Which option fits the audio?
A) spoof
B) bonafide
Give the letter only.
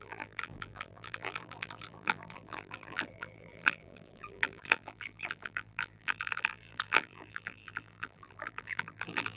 A